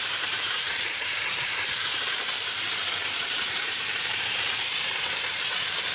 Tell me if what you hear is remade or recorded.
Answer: remade